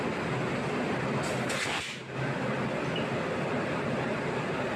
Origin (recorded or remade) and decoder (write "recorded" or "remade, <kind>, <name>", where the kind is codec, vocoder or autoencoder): recorded